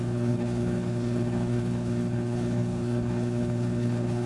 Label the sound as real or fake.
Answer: fake